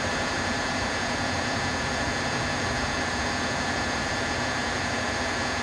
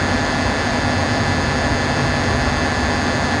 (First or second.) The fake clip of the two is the first